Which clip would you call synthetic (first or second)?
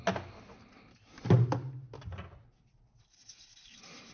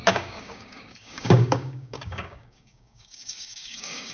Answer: second